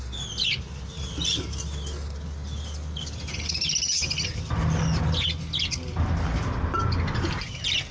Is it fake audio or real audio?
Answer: real